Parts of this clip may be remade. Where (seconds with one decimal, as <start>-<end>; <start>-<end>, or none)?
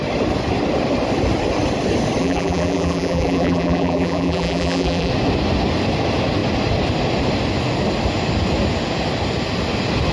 2.2-5.1